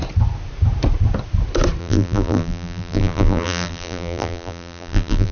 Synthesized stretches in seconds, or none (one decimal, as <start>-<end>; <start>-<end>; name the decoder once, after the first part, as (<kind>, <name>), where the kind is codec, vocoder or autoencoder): 1.8-5.3 (vocoder, BigVGAN v2)